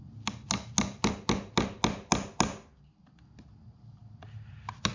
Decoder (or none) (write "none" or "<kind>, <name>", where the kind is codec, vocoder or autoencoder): none